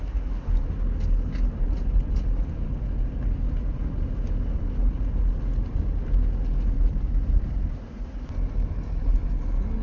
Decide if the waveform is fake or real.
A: real